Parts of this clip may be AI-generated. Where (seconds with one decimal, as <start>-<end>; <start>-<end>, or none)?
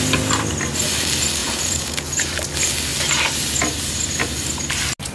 1.4-2.3